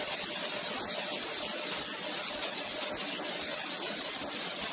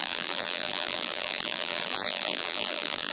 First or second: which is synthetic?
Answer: second